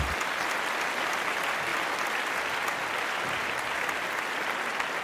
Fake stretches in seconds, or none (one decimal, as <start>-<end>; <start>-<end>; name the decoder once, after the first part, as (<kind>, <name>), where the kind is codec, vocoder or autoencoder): none